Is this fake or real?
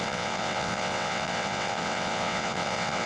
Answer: fake